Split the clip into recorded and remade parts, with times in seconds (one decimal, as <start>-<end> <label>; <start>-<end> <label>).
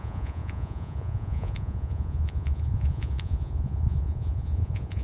0.0-5.0 remade